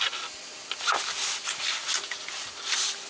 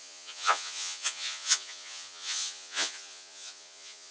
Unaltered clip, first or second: first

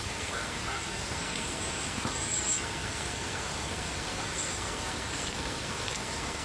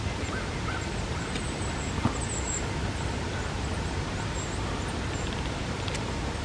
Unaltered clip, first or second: second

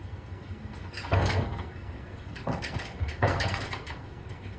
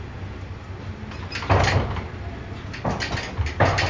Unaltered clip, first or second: second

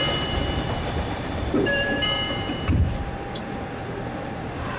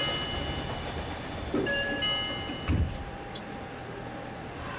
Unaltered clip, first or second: second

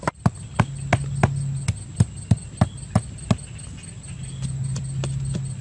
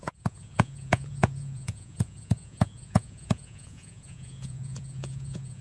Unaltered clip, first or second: first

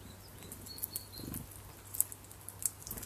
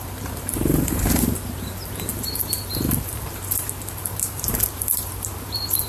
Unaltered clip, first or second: first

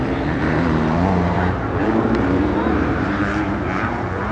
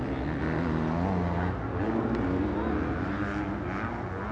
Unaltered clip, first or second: second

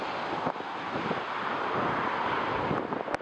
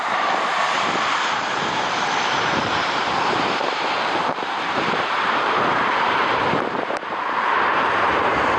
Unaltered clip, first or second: first